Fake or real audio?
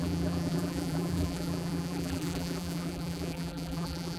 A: fake